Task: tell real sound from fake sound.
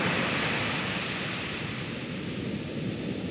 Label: real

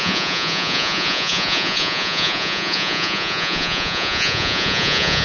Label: fake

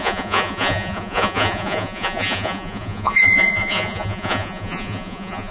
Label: fake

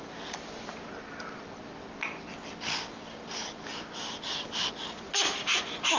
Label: real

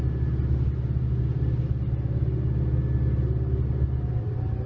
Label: real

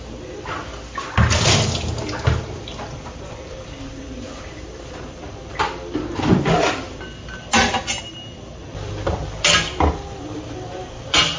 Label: real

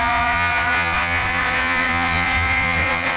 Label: fake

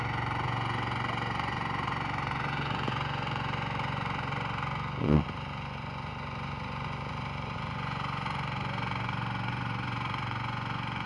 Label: fake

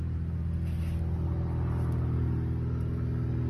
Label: real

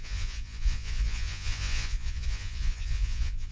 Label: fake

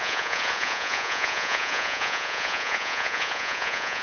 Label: fake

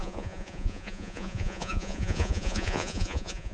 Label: fake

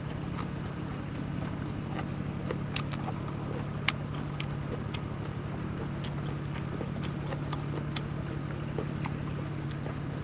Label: real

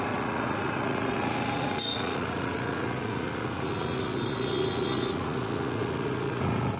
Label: fake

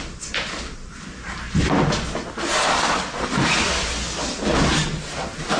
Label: real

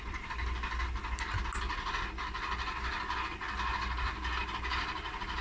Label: real